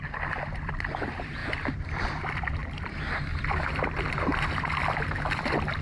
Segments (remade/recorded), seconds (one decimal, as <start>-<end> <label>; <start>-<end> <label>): 0.0-1.4 remade; 1.4-2.0 recorded; 2.0-2.6 remade; 2.6-3.8 recorded; 3.8-4.3 remade; 4.3-4.9 recorded; 4.9-5.8 remade